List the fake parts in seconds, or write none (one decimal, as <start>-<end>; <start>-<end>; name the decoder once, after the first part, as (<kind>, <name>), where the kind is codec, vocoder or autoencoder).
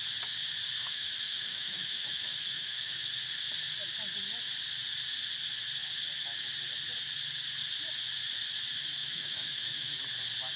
0.8-3.1 (autoencoder, DAC-VAE); 9.0-9.9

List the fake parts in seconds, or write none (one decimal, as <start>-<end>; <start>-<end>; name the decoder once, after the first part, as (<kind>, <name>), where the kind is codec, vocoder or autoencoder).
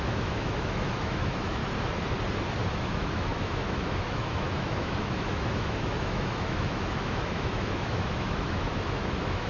0.0-1.6 (autoencoder, DAC-VAE); 2.7-9.5